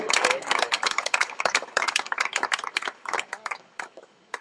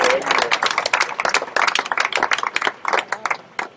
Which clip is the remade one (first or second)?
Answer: first